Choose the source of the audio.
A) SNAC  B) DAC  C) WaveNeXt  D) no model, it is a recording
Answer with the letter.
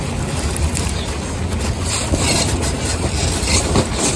D